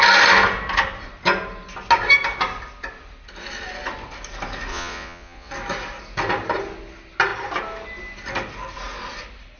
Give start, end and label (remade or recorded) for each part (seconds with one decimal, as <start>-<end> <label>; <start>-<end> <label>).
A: 0.0-4.7 recorded; 4.7-5.5 remade; 5.5-9.6 recorded